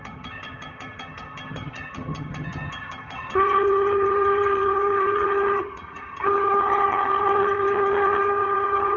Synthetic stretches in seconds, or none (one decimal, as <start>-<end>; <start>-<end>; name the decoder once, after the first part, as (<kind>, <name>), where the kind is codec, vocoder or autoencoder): 0.0-9.0 (vocoder, HiFi-GAN)